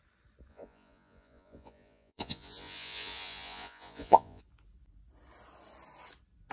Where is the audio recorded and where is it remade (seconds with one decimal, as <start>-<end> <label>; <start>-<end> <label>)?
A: 0.0-0.5 recorded; 0.5-4.4 remade; 4.4-6.5 recorded